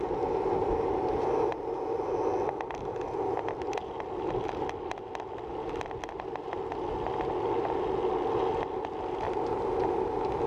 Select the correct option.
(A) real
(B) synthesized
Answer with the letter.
A